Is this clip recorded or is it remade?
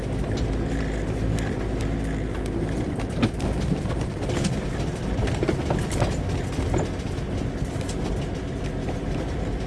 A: recorded